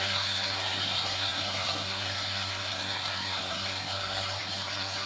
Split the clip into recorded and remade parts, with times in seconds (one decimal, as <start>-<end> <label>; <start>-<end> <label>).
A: 0.0-5.1 remade